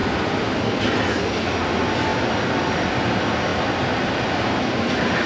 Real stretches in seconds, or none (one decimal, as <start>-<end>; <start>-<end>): 0.8-2.1; 2.9-3.5